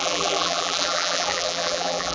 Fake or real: fake